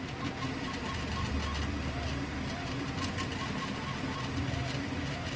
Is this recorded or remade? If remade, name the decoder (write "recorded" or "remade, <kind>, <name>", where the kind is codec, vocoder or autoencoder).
recorded